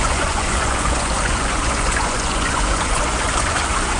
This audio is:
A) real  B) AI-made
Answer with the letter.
B